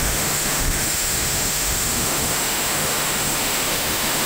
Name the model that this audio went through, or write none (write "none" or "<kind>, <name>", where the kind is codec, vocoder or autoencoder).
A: autoencoder, DAC-VAE